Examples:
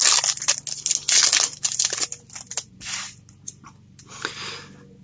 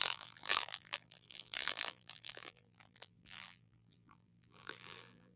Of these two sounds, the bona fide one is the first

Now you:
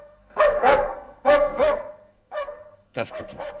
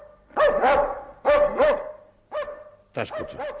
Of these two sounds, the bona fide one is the second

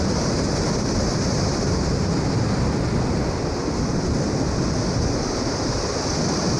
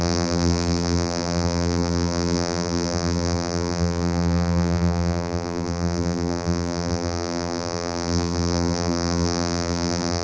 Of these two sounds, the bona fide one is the first